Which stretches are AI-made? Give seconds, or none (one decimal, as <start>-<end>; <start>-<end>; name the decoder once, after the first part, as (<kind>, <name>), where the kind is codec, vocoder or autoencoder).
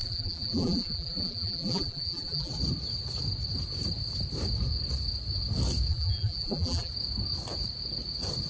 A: 0.0-2.5 (vocoder, BigVGAN v2); 5.9-6.9